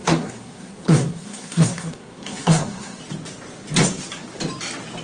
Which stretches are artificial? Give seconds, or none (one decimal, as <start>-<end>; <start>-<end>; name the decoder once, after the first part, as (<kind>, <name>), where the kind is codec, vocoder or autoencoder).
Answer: 0.0-3.0 (codec, SNAC)